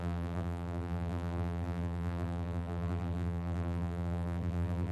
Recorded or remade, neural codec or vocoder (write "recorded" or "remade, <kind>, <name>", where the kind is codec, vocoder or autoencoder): remade, vocoder, BigVGAN v2